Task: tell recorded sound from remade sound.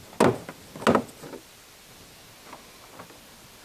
recorded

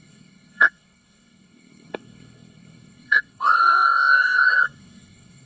remade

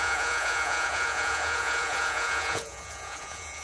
remade